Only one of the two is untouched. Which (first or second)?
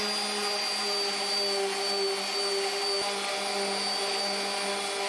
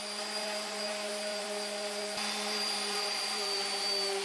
first